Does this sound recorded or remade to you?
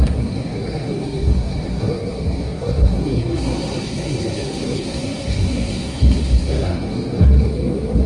remade